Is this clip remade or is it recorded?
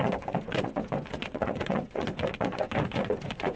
remade